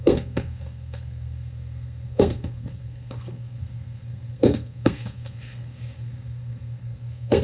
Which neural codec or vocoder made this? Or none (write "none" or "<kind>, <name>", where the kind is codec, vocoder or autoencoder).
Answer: codec, SNAC